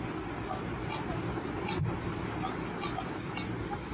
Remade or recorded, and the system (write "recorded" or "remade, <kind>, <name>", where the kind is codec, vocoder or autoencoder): recorded